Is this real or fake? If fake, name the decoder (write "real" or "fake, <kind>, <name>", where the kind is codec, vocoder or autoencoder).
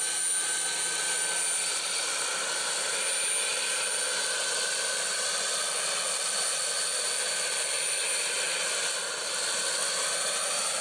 real